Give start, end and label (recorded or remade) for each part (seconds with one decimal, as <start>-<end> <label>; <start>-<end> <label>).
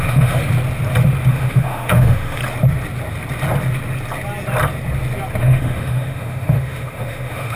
0.0-0.4 remade; 0.4-1.3 recorded; 1.3-2.4 remade; 2.4-5.4 recorded; 5.4-7.6 remade